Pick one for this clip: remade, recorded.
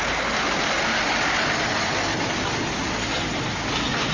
recorded